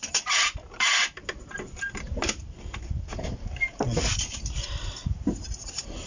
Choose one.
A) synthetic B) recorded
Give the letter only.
B